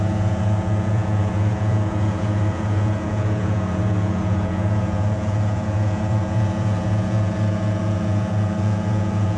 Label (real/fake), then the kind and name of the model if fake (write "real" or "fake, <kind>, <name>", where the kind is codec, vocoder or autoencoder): fake, vocoder, Vocos